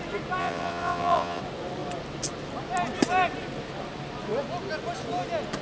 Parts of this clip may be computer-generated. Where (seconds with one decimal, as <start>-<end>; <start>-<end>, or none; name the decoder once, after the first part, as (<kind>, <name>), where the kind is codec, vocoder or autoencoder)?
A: 0.4-1.4 (vocoder, WaveNeXt)